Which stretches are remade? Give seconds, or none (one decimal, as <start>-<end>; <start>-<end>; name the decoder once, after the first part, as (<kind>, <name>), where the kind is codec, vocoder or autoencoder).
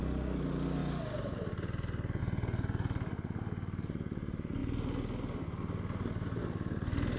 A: none